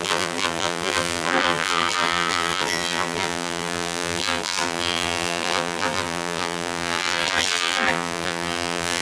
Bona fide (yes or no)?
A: no